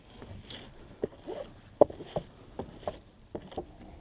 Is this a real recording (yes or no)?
yes